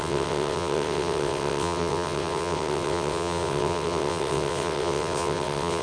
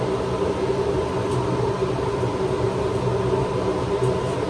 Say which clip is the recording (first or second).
second